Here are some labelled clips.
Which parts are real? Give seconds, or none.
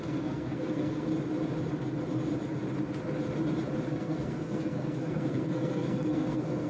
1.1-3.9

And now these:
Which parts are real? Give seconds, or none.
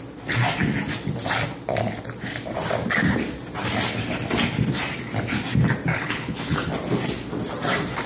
0.0-5.9; 6.6-8.1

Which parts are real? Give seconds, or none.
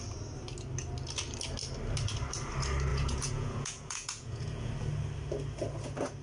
0.0-2.9; 4.7-6.2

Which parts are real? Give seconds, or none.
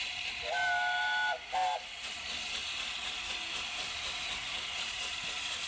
0.0-5.7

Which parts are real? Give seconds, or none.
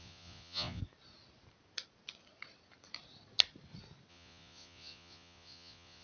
0.8-4.1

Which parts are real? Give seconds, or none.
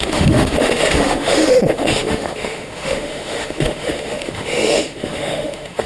none